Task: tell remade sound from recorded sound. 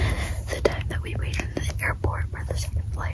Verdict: remade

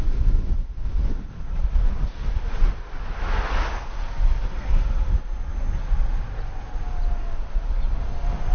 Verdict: recorded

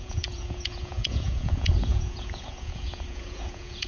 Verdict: remade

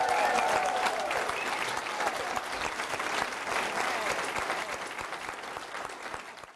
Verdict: recorded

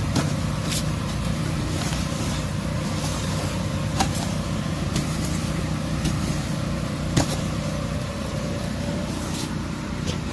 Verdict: remade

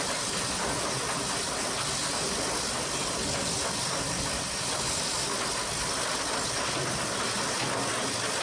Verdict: recorded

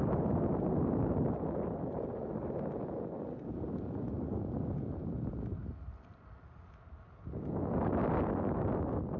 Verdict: recorded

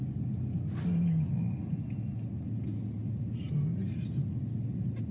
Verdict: recorded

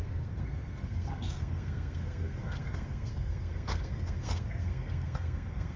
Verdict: remade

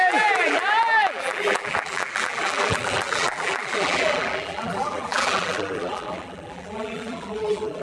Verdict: remade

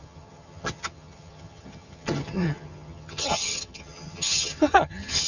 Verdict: remade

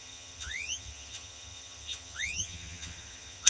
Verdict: remade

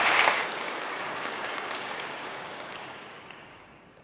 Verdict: remade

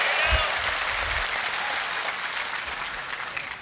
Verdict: recorded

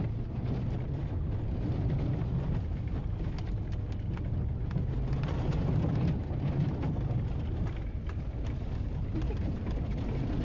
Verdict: recorded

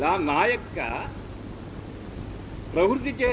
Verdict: recorded